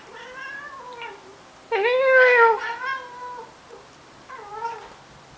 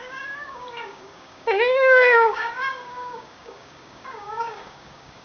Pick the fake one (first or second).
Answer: second